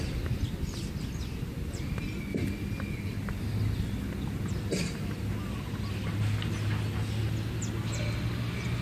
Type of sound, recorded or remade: recorded